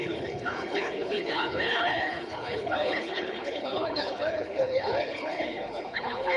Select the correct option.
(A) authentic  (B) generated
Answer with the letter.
B